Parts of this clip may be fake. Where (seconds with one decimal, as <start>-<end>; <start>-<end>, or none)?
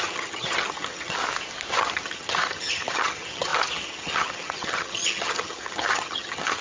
0.0-1.2; 1.7-6.6